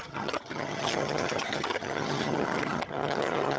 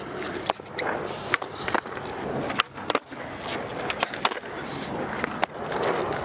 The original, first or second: second